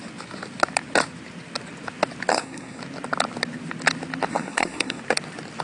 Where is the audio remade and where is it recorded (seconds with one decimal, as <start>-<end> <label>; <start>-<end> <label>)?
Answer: 0.0-2.3 recorded; 2.3-2.8 remade; 2.8-4.3 recorded; 4.3-5.0 remade; 5.0-5.6 recorded